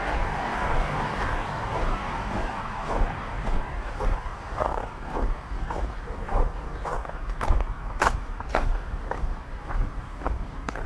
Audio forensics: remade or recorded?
remade